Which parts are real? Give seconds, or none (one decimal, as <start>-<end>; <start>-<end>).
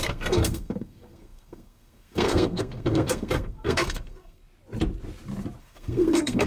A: 4.4-5.6